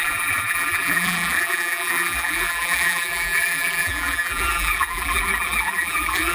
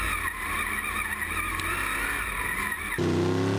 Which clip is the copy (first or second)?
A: first